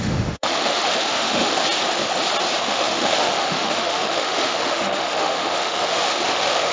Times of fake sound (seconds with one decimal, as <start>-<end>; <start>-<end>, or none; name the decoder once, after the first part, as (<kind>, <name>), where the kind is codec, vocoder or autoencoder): 0.0-1.6 (autoencoder, DAC-VAE); 2.6-6.7